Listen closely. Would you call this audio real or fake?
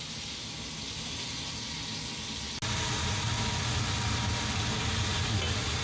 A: real